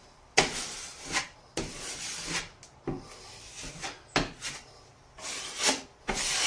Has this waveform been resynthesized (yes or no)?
no